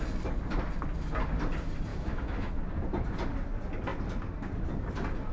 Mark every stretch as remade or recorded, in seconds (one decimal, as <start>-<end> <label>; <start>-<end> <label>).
0.0-1.9 recorded; 1.9-2.5 remade; 2.5-5.3 recorded